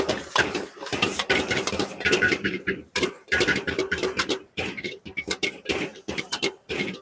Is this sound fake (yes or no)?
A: yes